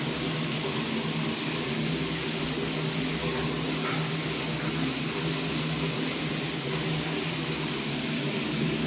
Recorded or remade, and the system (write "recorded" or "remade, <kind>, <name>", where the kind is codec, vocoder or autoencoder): recorded